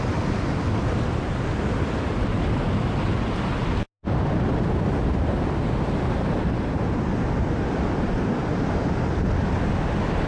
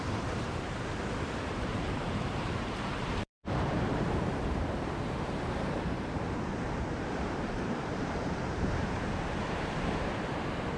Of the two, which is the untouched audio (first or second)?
first